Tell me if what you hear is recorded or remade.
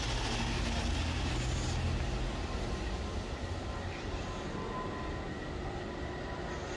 recorded